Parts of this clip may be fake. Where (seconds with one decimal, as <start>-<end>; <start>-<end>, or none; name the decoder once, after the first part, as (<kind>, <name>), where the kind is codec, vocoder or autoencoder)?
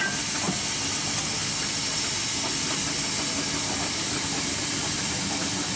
none